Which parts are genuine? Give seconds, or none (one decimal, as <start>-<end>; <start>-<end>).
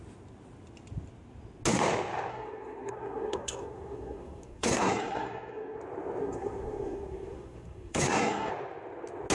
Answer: 0.0-2.3; 5.8-6.2; 8.5-9.3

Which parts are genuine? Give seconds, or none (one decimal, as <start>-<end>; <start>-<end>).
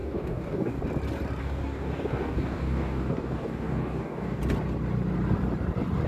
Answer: 0.8-1.4; 4.4-6.1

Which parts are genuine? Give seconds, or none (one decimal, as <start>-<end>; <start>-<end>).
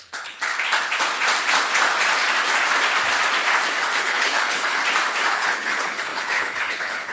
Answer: 0.5-4.0; 4.8-5.3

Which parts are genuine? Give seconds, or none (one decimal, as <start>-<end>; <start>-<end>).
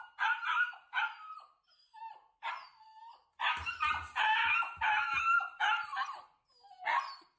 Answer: 0.0-7.4